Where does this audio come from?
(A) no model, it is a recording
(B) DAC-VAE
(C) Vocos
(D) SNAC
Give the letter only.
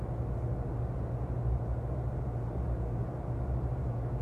A